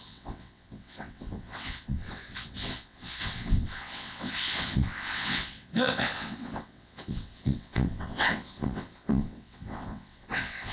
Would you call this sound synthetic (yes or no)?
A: yes